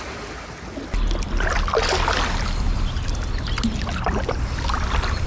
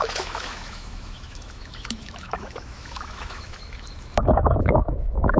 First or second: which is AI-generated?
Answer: second